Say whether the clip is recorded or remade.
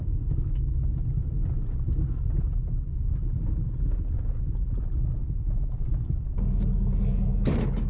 recorded